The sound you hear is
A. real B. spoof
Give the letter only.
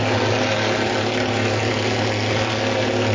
A